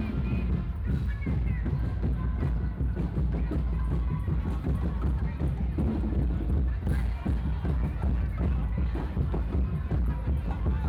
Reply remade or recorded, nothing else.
recorded